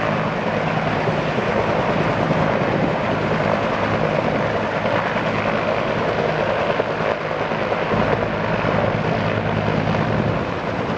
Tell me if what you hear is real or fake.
real